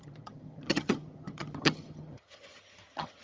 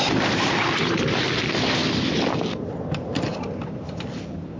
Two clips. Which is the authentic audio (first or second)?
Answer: second